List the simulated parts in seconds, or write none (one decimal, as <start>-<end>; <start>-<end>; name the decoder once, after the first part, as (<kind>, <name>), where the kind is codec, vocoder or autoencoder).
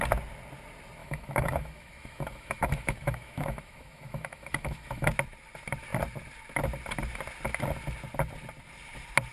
1.0-5.1 (autoencoder, DAC-VAE)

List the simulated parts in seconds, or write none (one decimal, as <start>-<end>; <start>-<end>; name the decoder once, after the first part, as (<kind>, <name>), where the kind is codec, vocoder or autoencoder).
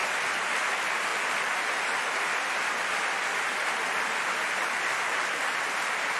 none